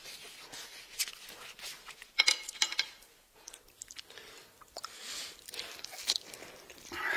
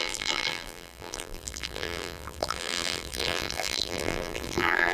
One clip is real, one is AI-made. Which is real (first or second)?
first